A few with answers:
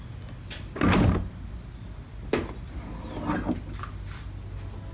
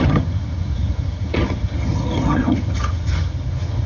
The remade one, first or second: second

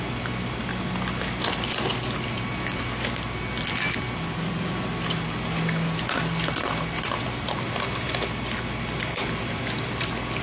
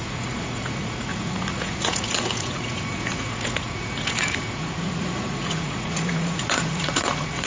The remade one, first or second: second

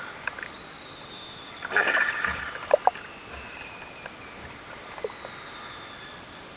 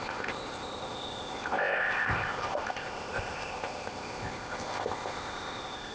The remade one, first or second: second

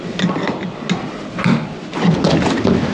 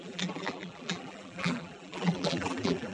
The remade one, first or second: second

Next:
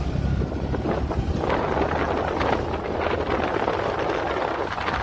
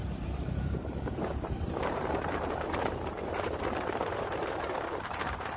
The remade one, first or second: second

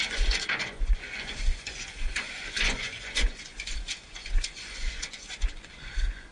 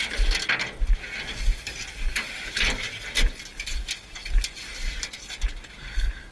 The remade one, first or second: first